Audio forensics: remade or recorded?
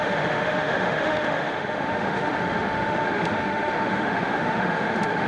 remade